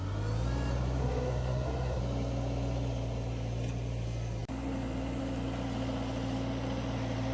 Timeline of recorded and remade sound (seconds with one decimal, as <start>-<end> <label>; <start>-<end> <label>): 0.0-1.0 recorded; 1.0-2.0 remade; 2.0-7.3 recorded